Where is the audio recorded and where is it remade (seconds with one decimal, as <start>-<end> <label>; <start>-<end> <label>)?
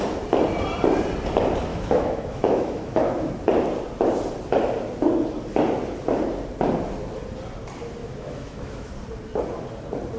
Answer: 0.0-1.7 recorded; 1.7-3.3 remade; 3.3-8.0 recorded; 8.0-8.9 remade; 8.9-10.2 recorded